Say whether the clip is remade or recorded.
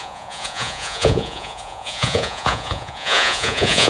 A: remade